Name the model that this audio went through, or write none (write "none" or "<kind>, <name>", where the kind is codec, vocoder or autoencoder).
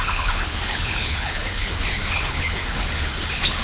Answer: codec, HILCodec